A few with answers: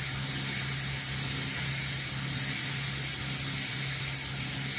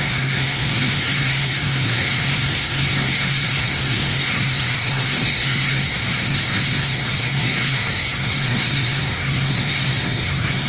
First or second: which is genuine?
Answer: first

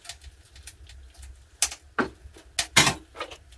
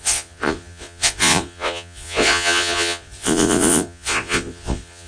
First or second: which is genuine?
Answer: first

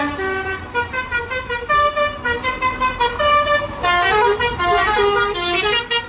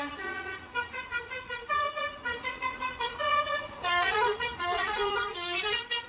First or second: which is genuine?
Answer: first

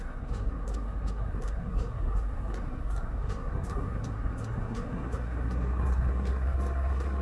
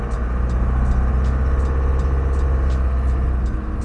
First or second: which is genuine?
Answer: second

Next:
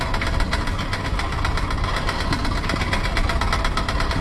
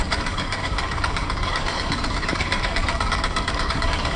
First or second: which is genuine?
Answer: first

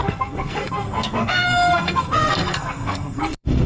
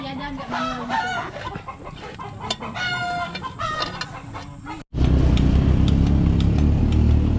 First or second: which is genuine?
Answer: second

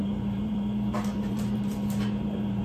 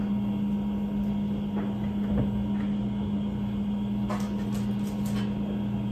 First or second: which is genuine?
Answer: second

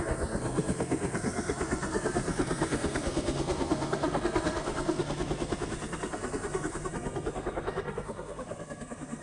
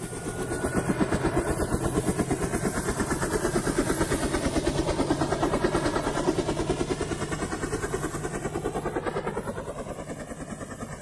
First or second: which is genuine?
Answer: second